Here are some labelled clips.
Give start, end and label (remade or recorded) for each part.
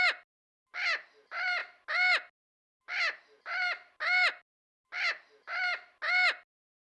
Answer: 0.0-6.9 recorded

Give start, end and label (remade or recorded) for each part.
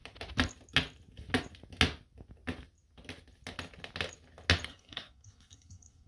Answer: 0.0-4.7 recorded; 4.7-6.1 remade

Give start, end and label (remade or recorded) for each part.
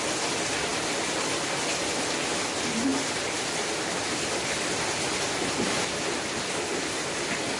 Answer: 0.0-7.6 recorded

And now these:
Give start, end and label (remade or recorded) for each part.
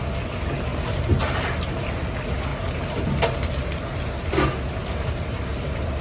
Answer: 0.0-0.7 recorded; 0.7-1.8 remade; 1.8-2.5 recorded; 2.5-3.0 remade; 3.0-4.8 recorded; 4.8-6.0 remade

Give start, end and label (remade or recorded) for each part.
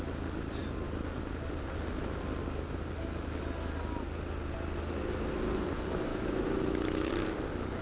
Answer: 0.0-6.1 recorded; 6.1-7.1 remade; 7.1-7.8 recorded